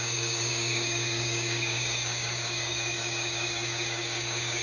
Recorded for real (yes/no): no